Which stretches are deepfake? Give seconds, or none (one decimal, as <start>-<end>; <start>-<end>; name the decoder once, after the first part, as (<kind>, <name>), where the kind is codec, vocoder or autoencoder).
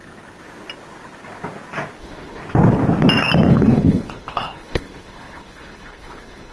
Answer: 2.0-2.4 (codec, HILCodec); 3.5-6.5